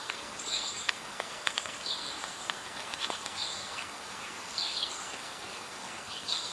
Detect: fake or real fake